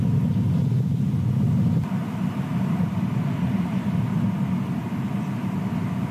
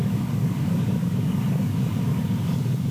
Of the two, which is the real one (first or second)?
first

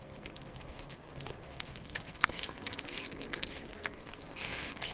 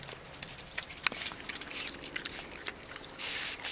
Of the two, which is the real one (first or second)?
second